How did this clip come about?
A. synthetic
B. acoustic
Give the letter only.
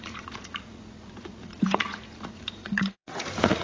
A